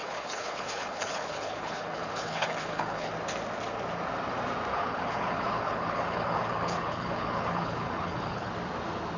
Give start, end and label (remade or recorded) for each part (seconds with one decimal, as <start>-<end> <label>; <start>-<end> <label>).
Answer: 0.0-3.1 remade; 3.1-4.7 recorded; 4.7-8.5 remade; 8.5-9.2 recorded